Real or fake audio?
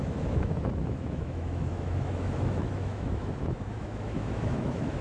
fake